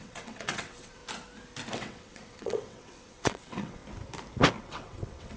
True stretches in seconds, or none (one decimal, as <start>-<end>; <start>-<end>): 1.0-1.7; 3.8-4.6